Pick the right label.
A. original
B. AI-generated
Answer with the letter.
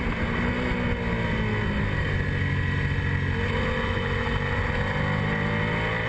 A